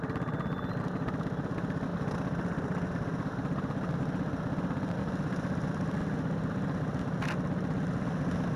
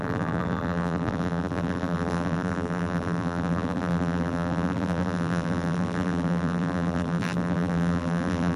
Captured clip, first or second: first